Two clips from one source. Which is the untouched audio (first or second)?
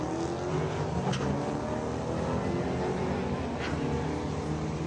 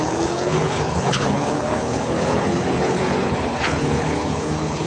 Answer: first